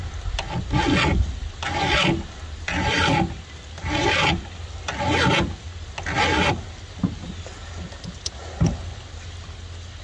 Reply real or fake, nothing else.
real